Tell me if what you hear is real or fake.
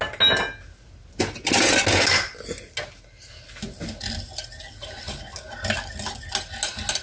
real